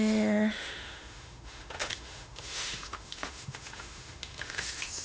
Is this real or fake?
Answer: fake